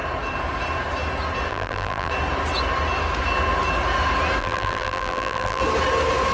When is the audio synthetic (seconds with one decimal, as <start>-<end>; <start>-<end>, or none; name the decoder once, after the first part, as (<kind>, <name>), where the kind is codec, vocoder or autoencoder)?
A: 1.5-2.1 (vocoder, BigVGAN v2); 4.4-5.6